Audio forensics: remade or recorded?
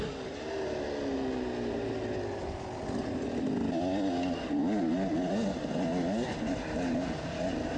recorded